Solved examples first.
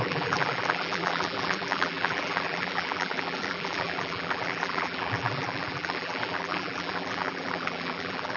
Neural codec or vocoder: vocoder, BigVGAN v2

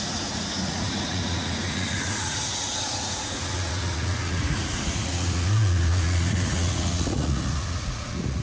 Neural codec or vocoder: vocoder, Vocos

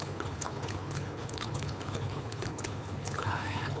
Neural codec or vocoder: codec, HILCodec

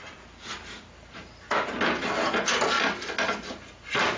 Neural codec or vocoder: none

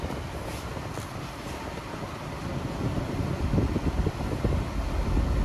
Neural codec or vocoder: none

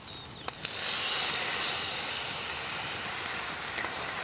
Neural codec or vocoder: none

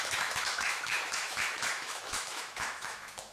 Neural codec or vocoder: autoencoder, DAC-VAE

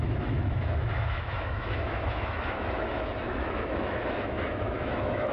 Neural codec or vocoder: autoencoder, DAC-VAE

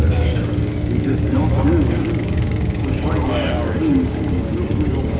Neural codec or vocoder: codec, DAC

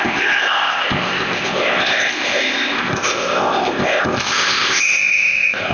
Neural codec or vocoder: codec, ZipCodec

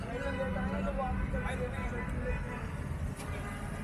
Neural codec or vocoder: none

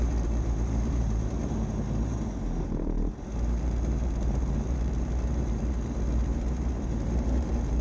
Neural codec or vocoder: vocoder, BigVGAN v2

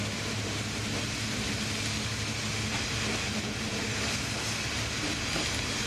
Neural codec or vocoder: none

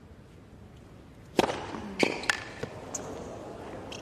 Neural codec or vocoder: none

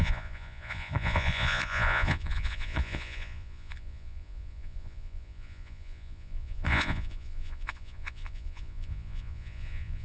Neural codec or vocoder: vocoder, Vocos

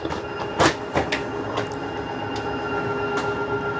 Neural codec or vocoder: none